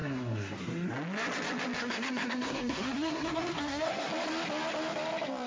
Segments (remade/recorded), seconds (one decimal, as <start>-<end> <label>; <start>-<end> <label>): 0.0-0.9 remade; 0.9-1.8 recorded; 1.8-4.1 remade; 4.1-5.5 recorded